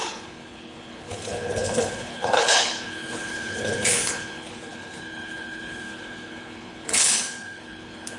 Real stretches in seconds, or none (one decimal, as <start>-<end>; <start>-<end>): none